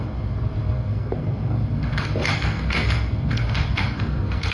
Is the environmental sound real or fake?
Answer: fake